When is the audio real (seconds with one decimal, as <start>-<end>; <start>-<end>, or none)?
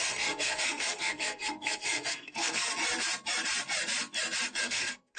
2.7-4.6